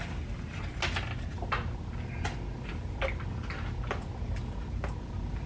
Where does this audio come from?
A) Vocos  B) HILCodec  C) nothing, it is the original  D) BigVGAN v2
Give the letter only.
C